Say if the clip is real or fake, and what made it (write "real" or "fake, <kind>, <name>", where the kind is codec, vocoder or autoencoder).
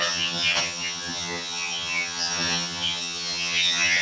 fake, vocoder, HiFi-GAN